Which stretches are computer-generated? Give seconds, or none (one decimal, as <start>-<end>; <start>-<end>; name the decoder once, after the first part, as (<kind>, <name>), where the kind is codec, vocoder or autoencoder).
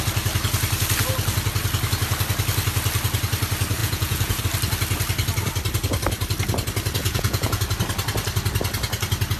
3.8-4.4 (vocoder, Vocos); 7.0-7.6